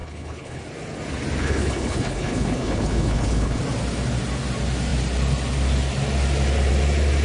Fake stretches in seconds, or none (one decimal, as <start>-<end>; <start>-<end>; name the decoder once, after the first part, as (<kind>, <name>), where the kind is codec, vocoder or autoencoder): 0.0-0.6 (codec, HILCodec); 1.4-3.6

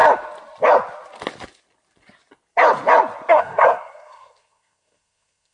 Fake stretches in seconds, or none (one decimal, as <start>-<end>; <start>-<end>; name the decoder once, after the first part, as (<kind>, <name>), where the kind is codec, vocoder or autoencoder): 3.3-5.5 (codec, SNAC)

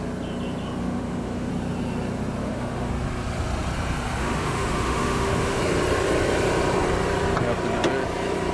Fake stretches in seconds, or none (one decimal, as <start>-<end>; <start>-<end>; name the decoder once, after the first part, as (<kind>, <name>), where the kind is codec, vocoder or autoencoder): 0.8-1.5 (autoencoder, DAC-VAE); 2.4-2.9; 4.2-5.6

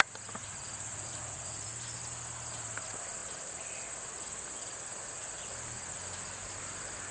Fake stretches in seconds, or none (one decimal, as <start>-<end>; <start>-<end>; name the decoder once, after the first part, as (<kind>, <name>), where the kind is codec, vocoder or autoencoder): 0.4-1.7 (vocoder, Vocos); 5.0-5.6